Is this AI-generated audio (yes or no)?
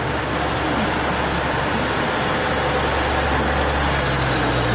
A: no